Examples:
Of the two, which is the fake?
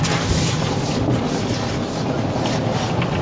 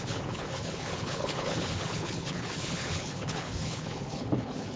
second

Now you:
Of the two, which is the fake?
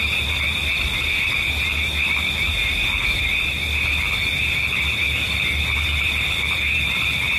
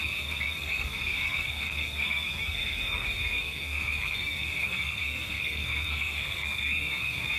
second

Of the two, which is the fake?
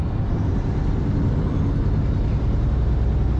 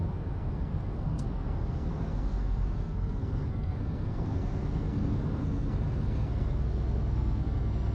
second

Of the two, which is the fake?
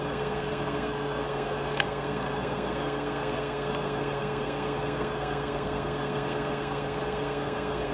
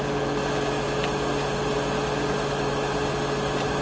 first